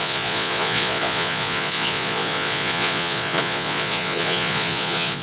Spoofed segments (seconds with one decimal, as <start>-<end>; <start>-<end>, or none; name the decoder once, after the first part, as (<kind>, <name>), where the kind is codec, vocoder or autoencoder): 0.0-5.2 (vocoder, Vocos)